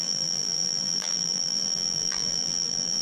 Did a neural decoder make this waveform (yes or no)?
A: yes